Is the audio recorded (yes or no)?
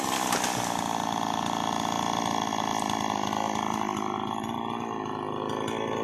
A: yes